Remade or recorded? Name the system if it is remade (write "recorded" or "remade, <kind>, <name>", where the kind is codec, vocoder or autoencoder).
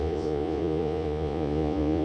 remade, vocoder, Vocos